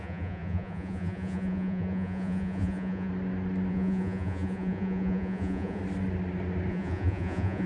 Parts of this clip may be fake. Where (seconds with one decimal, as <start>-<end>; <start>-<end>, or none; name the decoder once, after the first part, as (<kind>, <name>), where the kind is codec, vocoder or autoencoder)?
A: 0.0-3.1 (vocoder, Vocos); 3.7-5.8; 6.7-7.7

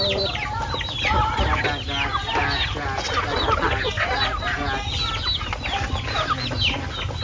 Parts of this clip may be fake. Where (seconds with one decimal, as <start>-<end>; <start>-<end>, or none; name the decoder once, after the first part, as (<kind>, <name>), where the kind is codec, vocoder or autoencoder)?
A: none

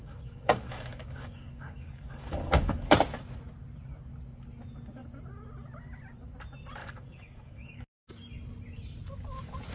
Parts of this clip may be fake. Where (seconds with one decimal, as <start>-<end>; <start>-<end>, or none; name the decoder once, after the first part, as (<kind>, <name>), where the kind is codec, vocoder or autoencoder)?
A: 0.0-2.9 (codec, DAC); 6.8-8.0

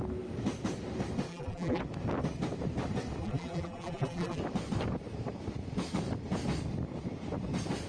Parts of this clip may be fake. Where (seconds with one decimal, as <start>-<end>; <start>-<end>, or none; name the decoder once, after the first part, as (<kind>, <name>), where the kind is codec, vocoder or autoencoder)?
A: 1.3-1.8 (vocoder, BigVGAN v2); 3.2-4.4

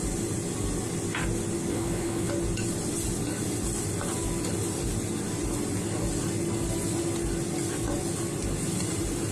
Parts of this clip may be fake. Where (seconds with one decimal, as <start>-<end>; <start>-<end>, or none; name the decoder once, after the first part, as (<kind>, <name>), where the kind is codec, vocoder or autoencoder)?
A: 1.7-2.3 (codec, HILCodec)

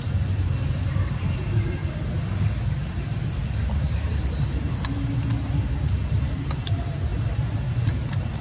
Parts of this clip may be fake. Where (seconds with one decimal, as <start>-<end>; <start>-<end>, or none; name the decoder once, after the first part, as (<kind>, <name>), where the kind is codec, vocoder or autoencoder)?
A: 0.0-8.4 (vocoder, BigVGAN v2)